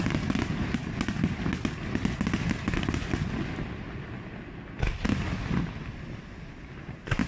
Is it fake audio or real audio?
real